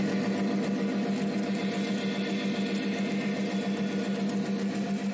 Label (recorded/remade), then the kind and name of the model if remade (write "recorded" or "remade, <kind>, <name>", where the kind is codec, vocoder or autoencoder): recorded